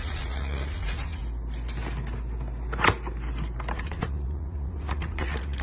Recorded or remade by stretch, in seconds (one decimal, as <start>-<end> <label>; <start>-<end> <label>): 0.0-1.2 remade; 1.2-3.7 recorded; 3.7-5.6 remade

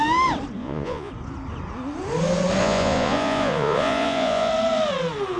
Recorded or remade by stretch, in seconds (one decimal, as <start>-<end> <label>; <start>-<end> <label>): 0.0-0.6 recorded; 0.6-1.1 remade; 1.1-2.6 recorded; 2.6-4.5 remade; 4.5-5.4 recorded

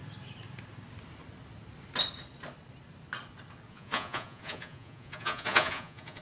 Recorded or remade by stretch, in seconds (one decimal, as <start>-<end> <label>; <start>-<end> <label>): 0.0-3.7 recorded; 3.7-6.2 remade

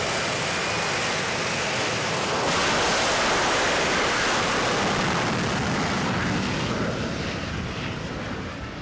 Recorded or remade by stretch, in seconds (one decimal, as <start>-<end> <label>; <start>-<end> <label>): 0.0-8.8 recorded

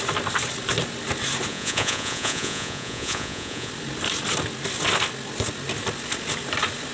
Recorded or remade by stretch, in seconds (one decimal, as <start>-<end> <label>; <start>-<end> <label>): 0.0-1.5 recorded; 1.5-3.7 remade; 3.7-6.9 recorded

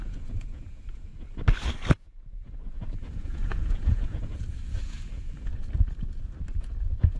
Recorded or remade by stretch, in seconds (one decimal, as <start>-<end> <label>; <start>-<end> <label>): 0.0-1.1 remade; 1.1-2.0 recorded; 2.0-5.5 remade; 5.5-6.6 recorded; 6.6-7.2 remade

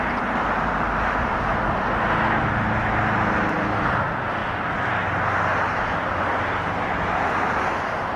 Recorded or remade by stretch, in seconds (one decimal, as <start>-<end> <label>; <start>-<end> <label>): 0.0-8.2 recorded